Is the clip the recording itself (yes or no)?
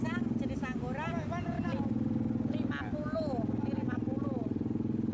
yes